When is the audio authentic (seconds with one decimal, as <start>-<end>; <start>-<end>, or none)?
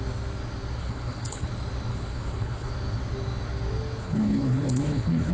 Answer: 0.0-0.8; 1.5-1.9; 2.7-4.0